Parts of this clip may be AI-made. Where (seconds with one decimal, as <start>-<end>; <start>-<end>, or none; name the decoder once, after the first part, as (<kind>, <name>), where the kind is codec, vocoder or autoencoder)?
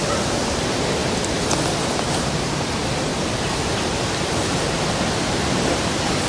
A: 0.0-1.0 (vocoder, BigVGAN v2); 1.8-3.1; 5.3-6.3